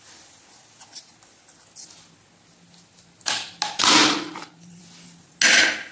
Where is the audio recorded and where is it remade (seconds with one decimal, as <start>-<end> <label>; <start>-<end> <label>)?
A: 0.0-4.0 recorded; 4.0-4.8 remade; 4.8-5.9 recorded